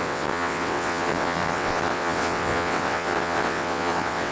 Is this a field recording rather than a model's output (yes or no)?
no